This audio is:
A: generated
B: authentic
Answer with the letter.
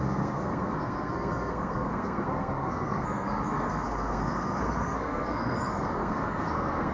A